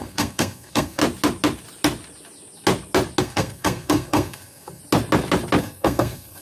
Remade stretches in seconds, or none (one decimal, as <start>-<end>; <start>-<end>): 0.0-1.0; 3.2-4.8; 5.6-6.4